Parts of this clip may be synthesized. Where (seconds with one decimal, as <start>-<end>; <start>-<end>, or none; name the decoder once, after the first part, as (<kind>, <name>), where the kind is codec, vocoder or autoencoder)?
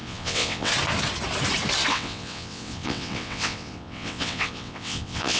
0.0-0.7 (vocoder, WaveNeXt); 1.9-5.4